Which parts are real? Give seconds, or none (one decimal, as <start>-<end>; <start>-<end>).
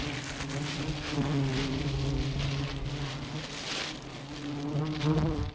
0.0-5.5